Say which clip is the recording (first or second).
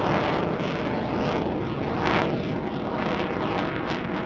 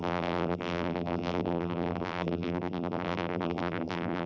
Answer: first